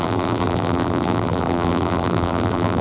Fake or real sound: fake